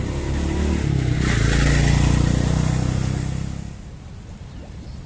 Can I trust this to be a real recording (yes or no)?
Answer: yes